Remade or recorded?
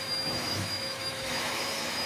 remade